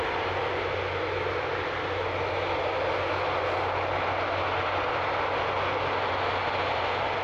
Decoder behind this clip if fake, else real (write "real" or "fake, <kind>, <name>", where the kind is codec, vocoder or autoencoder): real